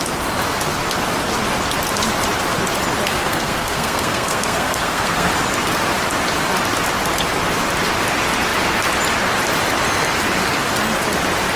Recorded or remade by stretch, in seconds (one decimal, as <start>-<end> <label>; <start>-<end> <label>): 0.0-3.1 recorded; 3.1-5.3 remade; 5.3-11.6 recorded